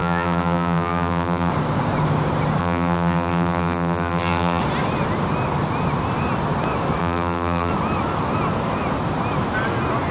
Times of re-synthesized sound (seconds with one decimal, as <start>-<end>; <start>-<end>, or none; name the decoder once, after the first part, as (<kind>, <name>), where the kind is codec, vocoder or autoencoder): 0.0-1.5 (vocoder, BigVGAN v2); 2.6-4.6; 7.0-7.7